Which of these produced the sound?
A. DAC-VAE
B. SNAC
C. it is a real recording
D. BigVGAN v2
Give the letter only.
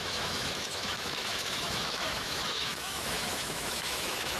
A